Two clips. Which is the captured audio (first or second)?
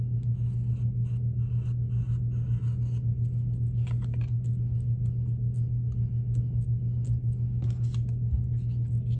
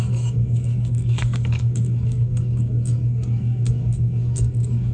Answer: first